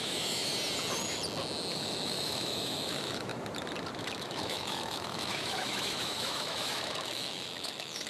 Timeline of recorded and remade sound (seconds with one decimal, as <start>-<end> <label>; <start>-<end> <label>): 0.0-0.5 remade; 0.5-1.7 recorded; 1.7-3.3 remade; 3.3-4.0 recorded; 4.0-8.1 remade